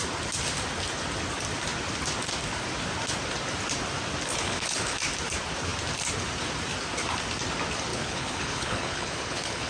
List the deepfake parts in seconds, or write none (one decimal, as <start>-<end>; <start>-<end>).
4.3-5.0; 7.9-9.7